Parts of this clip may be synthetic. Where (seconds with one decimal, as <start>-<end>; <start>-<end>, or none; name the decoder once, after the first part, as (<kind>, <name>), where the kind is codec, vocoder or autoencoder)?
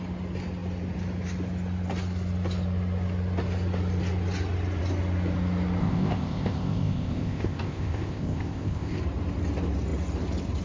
5.8-9.0 (codec, ZipCodec)